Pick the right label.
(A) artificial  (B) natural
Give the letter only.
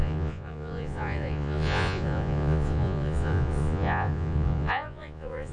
A